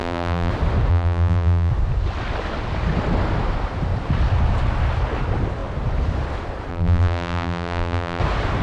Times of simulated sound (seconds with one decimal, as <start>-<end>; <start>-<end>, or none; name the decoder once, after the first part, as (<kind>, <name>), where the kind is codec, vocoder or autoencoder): 0.0-0.5 (vocoder, BigVGAN v2); 0.9-1.7; 6.7-8.2